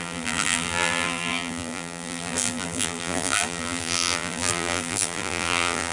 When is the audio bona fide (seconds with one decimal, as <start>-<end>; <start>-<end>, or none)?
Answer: none

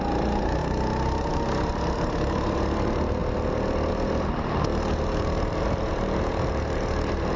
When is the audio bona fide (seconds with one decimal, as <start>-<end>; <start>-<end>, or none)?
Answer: 3.2-3.9

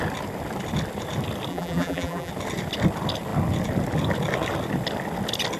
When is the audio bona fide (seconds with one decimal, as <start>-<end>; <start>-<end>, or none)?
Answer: 0.0-1.5; 2.3-5.6

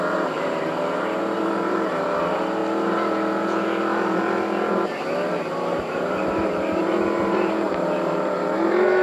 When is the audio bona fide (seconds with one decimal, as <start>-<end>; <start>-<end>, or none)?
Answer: 2.6-5.3

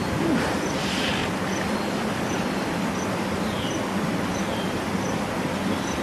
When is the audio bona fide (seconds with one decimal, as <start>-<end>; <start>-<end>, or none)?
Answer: 0.0-6.0